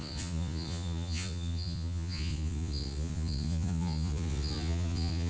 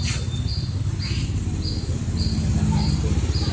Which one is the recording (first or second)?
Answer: second